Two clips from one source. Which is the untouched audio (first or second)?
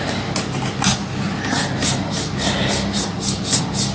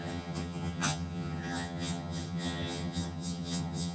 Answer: first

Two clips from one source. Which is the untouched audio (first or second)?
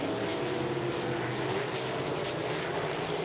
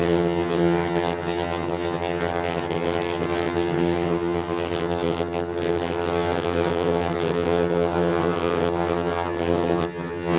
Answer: first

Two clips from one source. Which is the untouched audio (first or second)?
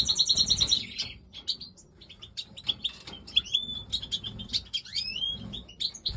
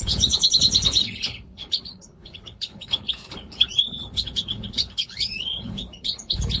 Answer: first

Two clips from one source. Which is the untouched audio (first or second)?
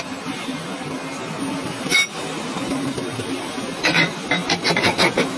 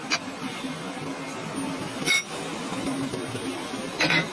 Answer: second